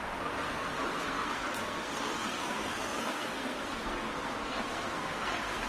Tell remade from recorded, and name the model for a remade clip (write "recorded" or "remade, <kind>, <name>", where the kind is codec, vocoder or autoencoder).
remade, codec, SNAC